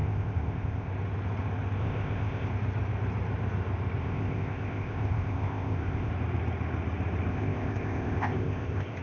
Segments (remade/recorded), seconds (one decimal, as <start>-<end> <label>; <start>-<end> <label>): 0.0-0.9 remade; 0.9-1.8 recorded; 1.8-2.5 remade; 2.5-4.0 recorded; 4.0-6.1 remade; 6.1-7.3 recorded; 7.3-9.0 remade